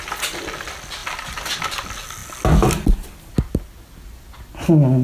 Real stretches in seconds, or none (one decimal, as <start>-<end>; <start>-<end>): 0.0-1.0; 1.6-5.0